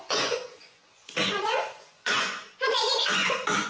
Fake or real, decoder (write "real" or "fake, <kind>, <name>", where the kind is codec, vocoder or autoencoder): fake, vocoder, Vocos